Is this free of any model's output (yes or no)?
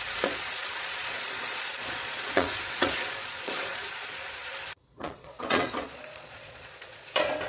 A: no